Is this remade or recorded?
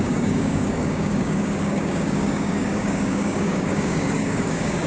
remade